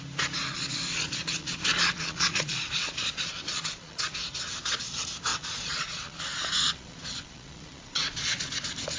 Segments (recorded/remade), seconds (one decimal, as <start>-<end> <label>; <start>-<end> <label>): 0.0-0.4 recorded; 0.4-4.0 remade; 4.0-5.3 recorded; 5.3-8.5 remade; 8.5-9.0 recorded